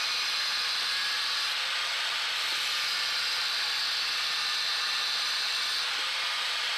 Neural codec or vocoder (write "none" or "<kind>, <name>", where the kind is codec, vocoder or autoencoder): vocoder, BigVGAN v2